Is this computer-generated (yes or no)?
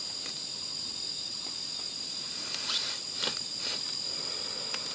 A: no